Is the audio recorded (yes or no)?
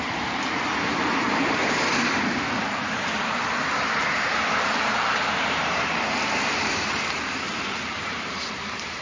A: no